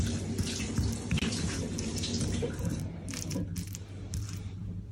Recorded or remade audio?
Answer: remade